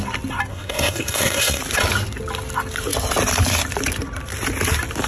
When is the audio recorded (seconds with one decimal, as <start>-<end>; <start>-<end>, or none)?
0.0-0.5; 1.6-5.1

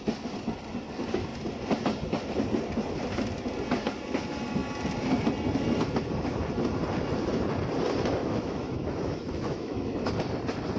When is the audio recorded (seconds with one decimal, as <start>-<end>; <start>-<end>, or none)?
0.0-8.2; 10.1-10.8

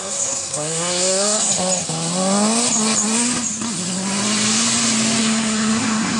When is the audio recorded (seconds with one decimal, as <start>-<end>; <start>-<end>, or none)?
1.5-5.2

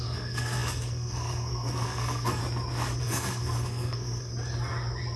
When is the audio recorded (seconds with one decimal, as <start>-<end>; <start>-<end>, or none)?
2.4-3.0; 4.3-5.2

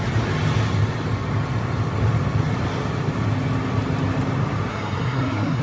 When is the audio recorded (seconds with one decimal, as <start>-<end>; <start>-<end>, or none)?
0.0-4.7

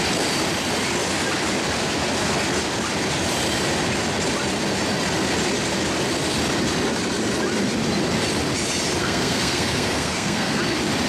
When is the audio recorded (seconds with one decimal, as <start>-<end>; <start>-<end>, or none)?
0.0-9.0; 10.6-11.1